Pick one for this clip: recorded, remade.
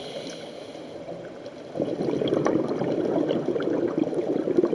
recorded